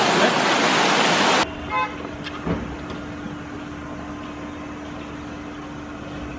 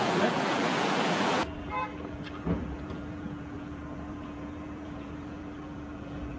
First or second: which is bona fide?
first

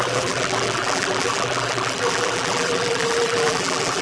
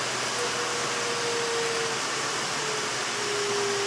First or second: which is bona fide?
second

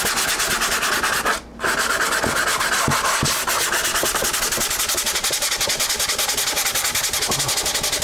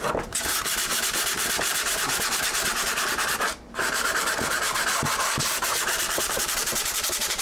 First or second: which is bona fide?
first